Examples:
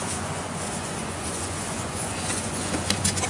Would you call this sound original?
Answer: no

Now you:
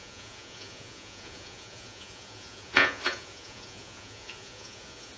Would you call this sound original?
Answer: no